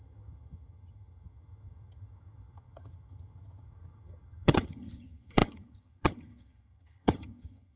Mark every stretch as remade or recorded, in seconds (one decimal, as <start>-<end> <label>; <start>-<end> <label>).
0.0-7.8 remade